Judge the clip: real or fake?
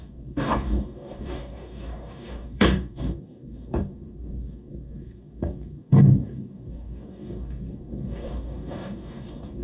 fake